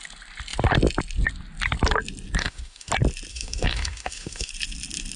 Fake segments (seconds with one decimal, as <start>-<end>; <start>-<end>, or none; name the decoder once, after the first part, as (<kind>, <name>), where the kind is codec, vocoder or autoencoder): 2.4-2.9 (autoencoder, DAC-VAE); 3.3-4.5